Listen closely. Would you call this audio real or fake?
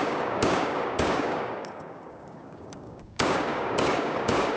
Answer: fake